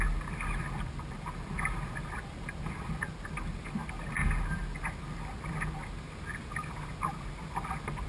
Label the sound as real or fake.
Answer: real